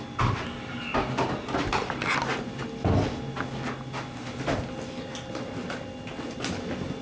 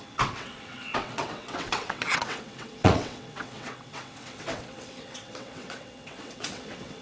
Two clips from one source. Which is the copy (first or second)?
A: second